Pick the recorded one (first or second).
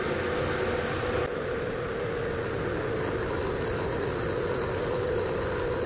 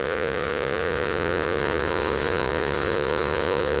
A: first